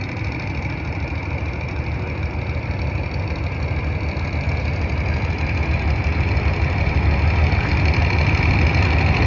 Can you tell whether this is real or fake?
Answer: real